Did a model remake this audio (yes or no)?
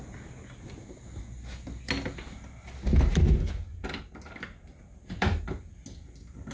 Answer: no